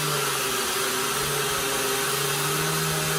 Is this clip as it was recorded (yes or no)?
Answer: yes